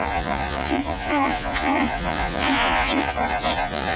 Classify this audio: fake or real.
fake